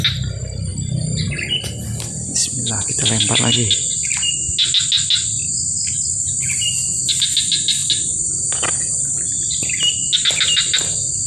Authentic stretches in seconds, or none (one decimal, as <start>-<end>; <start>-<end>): 0.0-11.3